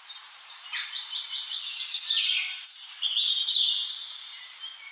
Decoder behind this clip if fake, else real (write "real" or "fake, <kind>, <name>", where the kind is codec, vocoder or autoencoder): fake, vocoder, BigVGAN v2